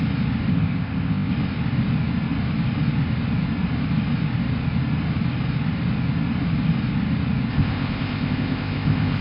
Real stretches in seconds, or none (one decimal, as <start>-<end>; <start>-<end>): 0.0-0.5; 1.3-7.5